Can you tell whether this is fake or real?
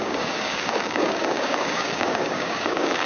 fake